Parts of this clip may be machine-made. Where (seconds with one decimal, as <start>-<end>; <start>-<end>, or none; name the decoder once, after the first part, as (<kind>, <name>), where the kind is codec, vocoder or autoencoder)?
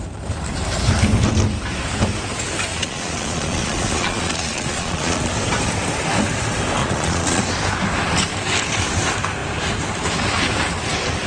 2.7-5.3 (vocoder, Vocos); 6.8-7.4